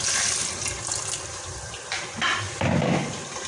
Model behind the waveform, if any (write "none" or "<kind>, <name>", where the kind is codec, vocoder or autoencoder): none